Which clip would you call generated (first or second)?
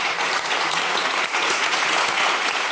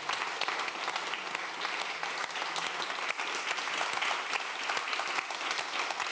first